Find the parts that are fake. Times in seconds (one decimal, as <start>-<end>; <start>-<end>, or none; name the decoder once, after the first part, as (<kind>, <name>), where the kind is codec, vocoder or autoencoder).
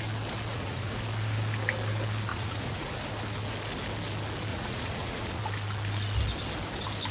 0.5-1.0 (vocoder, Vocos); 2.3-2.9; 4.5-5.4